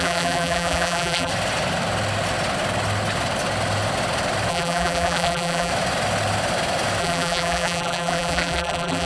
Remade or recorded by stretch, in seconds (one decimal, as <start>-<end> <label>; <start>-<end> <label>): 0.0-1.3 remade; 1.3-4.5 recorded; 4.5-5.7 remade; 5.7-7.0 recorded; 7.0-9.1 remade